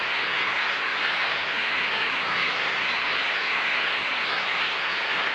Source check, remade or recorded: remade